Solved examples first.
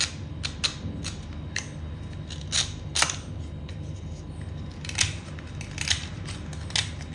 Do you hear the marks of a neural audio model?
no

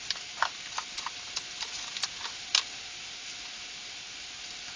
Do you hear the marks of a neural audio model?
no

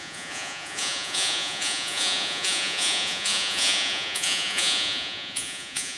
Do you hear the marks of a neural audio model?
yes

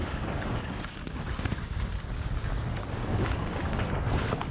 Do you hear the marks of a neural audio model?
yes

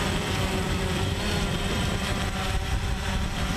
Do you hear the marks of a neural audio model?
yes